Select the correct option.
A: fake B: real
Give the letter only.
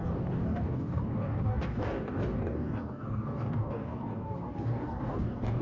A